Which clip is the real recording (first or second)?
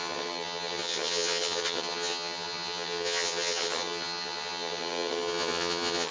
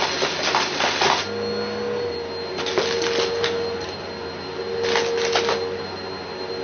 second